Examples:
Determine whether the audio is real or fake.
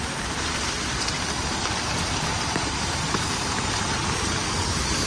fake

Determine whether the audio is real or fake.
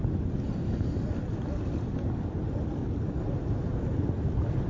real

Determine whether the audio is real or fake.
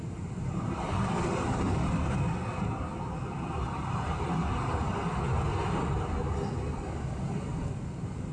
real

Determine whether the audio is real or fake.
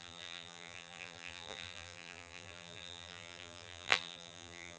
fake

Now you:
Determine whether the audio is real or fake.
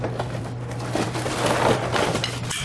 real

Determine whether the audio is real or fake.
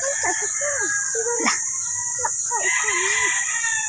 fake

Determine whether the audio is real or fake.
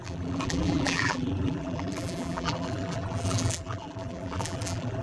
fake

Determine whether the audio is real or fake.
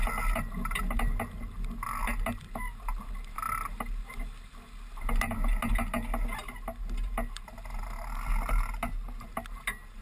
real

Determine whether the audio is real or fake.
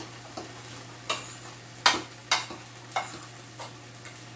real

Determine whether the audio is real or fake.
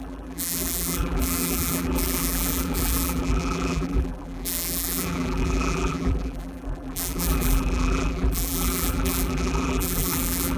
fake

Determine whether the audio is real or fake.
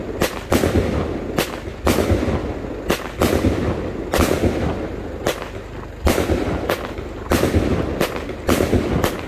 real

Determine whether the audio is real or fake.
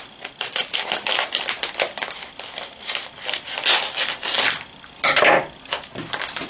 real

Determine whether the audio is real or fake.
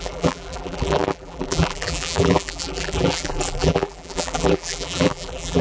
fake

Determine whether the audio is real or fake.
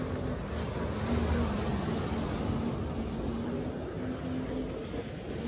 real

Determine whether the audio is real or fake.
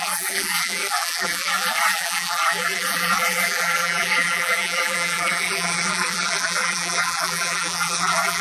fake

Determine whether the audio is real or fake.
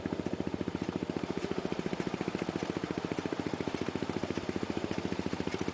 fake